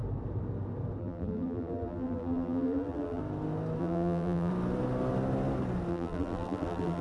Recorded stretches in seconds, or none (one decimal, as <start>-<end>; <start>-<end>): 0.0-1.0; 3.2-3.8; 4.5-5.9